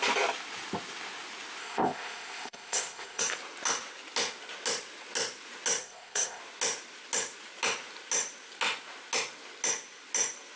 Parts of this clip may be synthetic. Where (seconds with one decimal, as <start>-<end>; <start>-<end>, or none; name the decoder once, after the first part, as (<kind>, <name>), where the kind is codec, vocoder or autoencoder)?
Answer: 1.6-3.2 (codec, ZipCodec); 5.8-6.4